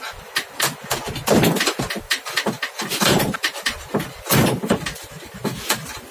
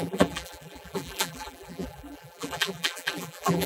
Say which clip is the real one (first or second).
first